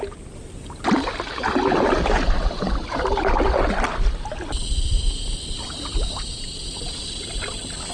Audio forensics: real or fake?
real